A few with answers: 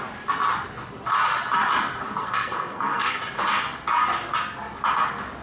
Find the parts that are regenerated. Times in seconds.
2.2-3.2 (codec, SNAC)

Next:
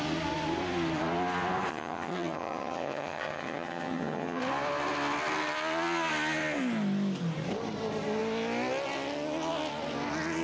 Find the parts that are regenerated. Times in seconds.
1.7-4.4 (vocoder, HiFi-GAN)

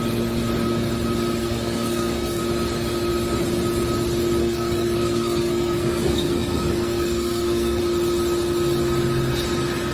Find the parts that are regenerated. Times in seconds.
1.4-2.4 (codec, SNAC); 4.4-7.8

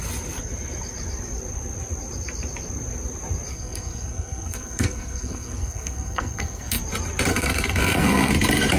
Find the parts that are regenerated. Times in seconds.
3.5-6.8 (codec, SNAC); 7.3-8.3

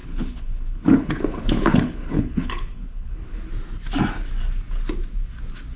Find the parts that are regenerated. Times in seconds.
0.0-3.5 (codec, HILCodec)

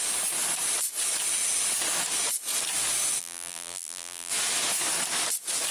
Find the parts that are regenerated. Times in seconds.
3.2-4.3 (vocoder, BigVGAN v2)

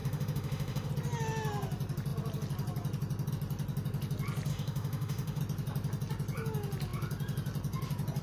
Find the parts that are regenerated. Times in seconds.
0.0-0.9 (autoencoder, DAC-VAE); 4.5-5.4

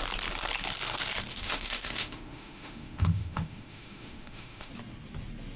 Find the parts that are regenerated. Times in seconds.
1.3-4.7 (autoencoder, DAC-VAE)